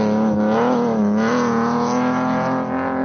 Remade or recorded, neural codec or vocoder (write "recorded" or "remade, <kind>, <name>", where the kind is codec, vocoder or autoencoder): recorded